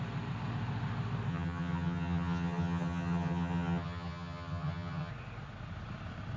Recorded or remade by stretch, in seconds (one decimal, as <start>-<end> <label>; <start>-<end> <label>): 0.0-1.3 recorded; 1.3-5.1 remade; 5.1-6.4 recorded